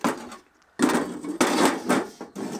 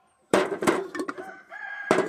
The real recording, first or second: first